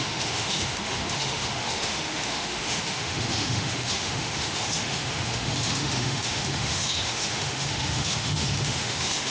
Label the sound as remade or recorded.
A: remade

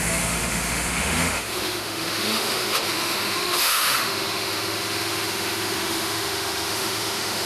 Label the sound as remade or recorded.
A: remade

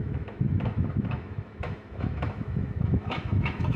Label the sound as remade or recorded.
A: remade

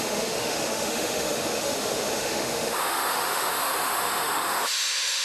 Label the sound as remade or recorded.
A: remade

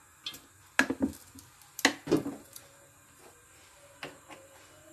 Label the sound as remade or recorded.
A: recorded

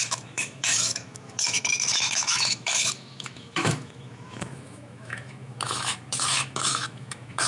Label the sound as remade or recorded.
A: remade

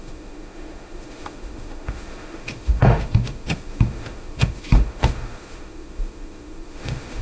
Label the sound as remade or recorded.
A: remade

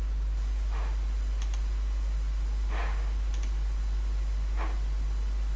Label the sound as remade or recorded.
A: recorded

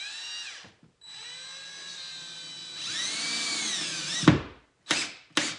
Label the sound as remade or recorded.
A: recorded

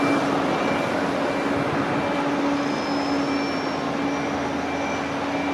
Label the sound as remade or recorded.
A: recorded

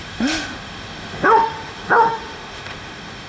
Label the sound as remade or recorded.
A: remade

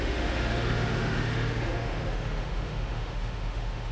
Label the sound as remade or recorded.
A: remade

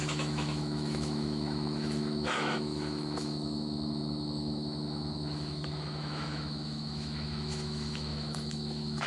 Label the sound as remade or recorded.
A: remade